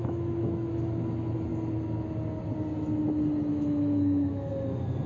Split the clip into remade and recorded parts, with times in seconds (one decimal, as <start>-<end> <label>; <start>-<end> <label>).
0.0-0.8 remade; 0.8-3.5 recorded; 3.5-4.5 remade; 4.5-5.1 recorded